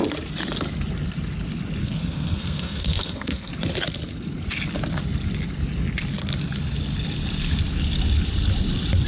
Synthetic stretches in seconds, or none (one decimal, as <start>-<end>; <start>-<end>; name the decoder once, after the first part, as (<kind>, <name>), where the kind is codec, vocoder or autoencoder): 1.8-3.5 (codec, SNAC)